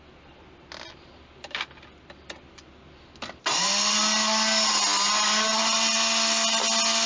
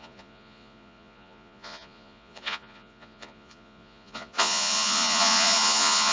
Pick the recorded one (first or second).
first